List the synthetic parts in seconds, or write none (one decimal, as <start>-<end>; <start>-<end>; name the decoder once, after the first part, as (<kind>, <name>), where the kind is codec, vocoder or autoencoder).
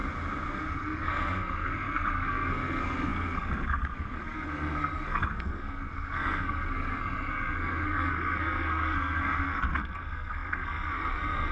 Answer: 0.5-11.5 (codec, SNAC)